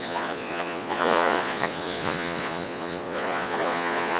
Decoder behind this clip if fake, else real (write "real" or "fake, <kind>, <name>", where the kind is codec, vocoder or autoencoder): fake, vocoder, Vocos